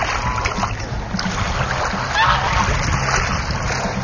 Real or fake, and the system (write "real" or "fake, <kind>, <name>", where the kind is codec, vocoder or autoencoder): real